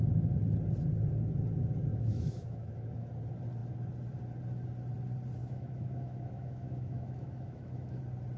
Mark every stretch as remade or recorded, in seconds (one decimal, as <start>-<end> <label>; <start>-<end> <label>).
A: 0.0-1.9 recorded; 1.9-3.1 remade; 3.1-5.4 recorded; 5.4-8.0 remade; 8.0-8.4 recorded